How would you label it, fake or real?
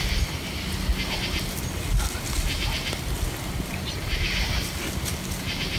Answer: real